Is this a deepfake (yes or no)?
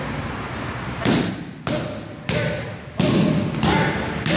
no